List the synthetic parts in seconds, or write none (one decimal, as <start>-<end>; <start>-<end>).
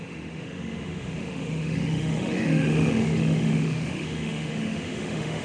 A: 0.0-5.4